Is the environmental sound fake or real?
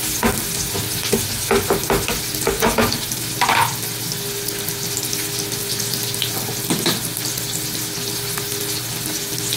real